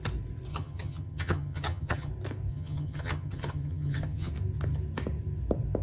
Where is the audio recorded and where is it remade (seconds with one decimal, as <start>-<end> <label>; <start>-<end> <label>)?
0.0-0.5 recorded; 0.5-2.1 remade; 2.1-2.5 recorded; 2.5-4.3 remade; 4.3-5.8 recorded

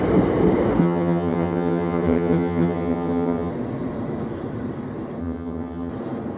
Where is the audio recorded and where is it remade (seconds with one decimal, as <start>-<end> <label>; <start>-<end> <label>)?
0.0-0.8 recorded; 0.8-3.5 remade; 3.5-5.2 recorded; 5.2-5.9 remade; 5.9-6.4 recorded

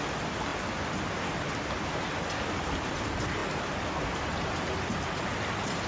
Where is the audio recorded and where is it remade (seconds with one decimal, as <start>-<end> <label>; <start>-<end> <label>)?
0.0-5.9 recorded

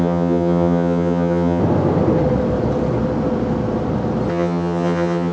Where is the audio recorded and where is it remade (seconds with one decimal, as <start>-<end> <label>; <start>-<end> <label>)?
0.0-1.6 remade; 1.6-4.3 recorded; 4.3-5.3 remade

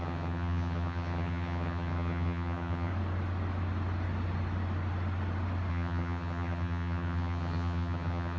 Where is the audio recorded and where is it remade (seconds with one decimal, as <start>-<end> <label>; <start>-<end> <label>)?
0.0-2.9 remade; 2.9-5.7 recorded; 5.7-8.4 remade